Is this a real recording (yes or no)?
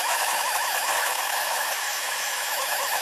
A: no